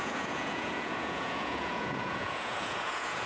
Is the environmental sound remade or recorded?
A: remade